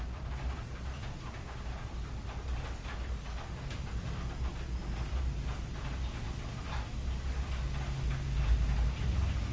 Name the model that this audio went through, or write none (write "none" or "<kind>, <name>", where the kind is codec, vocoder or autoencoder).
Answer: none